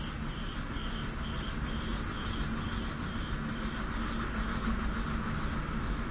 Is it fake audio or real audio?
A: real